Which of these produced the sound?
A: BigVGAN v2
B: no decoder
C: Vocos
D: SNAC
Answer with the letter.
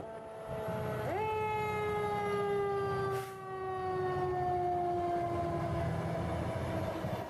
B